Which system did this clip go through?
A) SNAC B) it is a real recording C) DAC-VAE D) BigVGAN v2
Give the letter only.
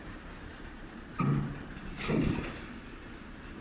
B